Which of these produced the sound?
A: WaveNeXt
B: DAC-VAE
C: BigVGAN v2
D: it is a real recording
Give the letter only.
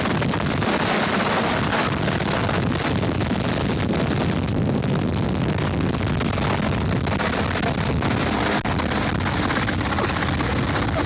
D